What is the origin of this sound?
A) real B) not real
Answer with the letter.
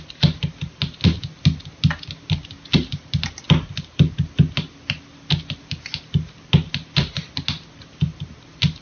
A